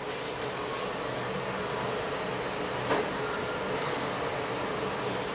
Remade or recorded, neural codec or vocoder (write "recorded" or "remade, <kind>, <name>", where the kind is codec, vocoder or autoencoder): recorded